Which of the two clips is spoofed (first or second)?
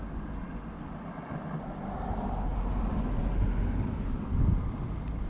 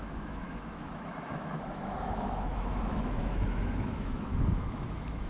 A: second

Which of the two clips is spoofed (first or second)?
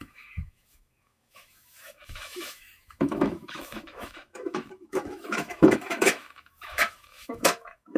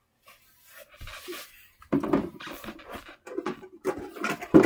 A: first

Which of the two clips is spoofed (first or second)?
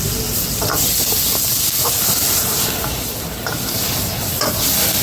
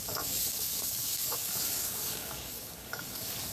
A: second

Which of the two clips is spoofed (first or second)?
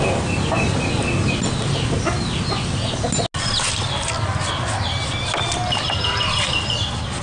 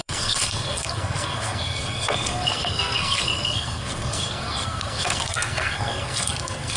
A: second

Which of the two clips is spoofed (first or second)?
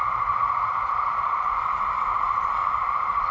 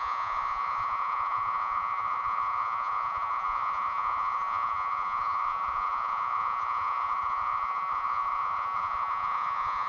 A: second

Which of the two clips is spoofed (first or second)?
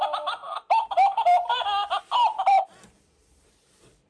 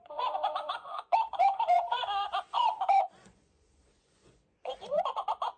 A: second